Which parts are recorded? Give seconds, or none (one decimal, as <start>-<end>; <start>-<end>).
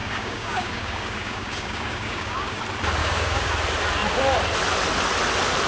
2.6-3.0; 3.5-5.7